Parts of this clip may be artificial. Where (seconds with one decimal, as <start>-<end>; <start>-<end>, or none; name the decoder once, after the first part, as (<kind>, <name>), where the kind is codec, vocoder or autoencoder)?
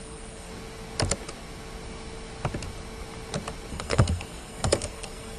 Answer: 0.0-0.5 (codec, SNAC); 3.7-5.4